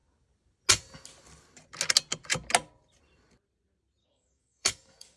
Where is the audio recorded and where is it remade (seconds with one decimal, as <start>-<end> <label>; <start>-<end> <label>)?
0.0-4.0 recorded; 4.0-5.2 remade